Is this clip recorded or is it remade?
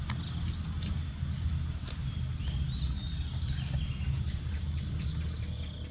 recorded